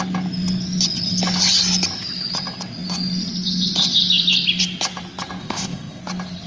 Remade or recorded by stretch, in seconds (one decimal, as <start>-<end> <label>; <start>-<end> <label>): 0.0-5.4 recorded; 5.4-6.0 remade; 6.0-6.5 recorded